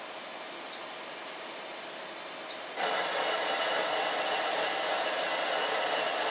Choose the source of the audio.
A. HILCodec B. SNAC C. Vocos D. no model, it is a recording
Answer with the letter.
D